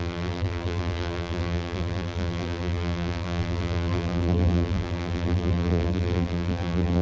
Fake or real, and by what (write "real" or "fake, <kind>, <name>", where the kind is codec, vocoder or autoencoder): fake, vocoder, BigVGAN v2